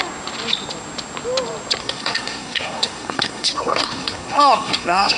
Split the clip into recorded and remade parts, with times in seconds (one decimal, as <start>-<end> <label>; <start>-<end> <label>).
0.0-1.8 recorded; 1.8-5.2 remade